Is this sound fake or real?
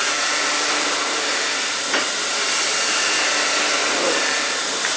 real